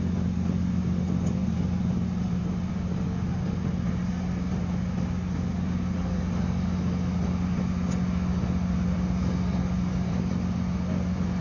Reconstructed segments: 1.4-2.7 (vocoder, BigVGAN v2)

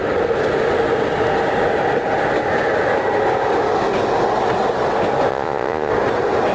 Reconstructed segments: 5.3-5.9 (vocoder, Vocos)

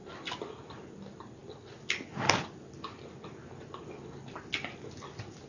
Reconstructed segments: none

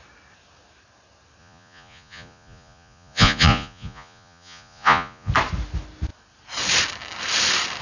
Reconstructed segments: 1.4-5.3 (vocoder, Vocos)

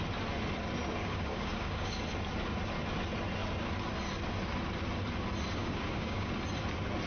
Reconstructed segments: 1.0-2.0 (codec, DAC); 5.6-6.3

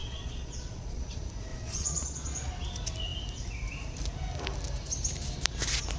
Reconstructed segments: 0.0-1.0 (vocoder, Vocos); 1.5-2.5

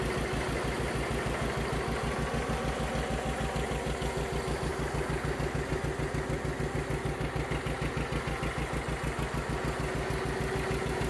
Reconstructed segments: none